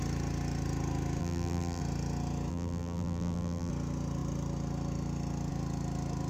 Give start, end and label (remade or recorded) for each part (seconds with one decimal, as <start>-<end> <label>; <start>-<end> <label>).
0.0-1.2 recorded; 1.2-1.8 remade; 1.8-2.5 recorded; 2.5-3.7 remade; 3.7-6.3 recorded